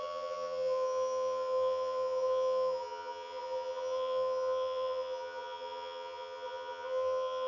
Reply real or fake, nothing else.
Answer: fake